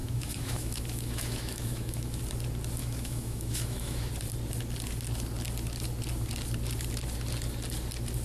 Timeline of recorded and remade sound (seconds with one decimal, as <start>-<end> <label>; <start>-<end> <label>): 0.0-2.2 remade; 2.2-2.8 recorded; 2.8-4.1 remade; 4.1-8.2 recorded

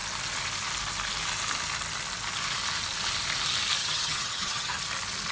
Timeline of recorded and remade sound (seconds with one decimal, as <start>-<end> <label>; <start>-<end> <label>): 0.0-3.8 recorded; 3.8-4.8 remade; 4.8-5.3 recorded

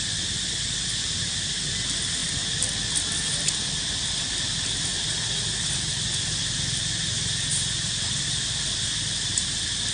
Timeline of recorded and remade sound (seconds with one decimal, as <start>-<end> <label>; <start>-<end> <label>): 0.0-9.9 recorded

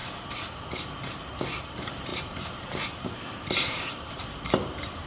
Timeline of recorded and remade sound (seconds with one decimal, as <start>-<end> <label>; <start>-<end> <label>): 0.0-0.7 recorded; 0.7-5.1 remade